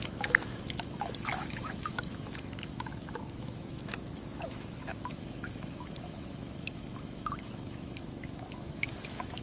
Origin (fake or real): fake